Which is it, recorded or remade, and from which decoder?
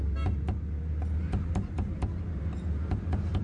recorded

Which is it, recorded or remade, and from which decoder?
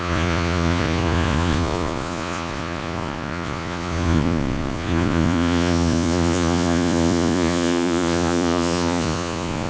remade, vocoder, Vocos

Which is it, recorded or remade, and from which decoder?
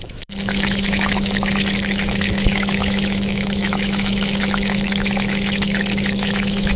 remade, autoencoder, DAC-VAE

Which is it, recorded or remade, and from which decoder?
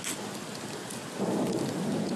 recorded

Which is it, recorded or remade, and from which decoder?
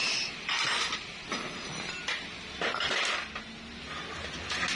recorded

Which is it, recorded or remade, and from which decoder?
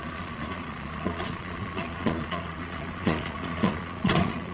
remade, vocoder, Vocos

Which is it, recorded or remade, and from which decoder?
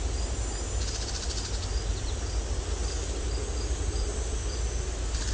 recorded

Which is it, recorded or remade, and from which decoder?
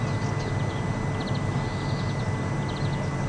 recorded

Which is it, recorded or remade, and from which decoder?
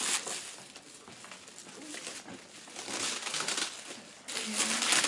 recorded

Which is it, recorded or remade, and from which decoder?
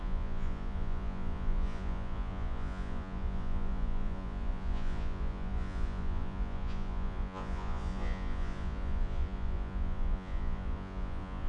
remade, vocoder, Vocos